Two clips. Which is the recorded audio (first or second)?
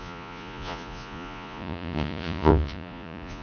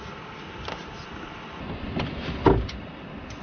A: second